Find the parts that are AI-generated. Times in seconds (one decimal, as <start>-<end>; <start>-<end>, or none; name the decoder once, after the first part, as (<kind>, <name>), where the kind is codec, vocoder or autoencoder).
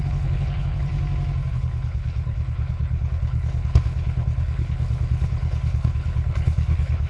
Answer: 0.0-0.9 (codec, HILCodec); 1.5-7.1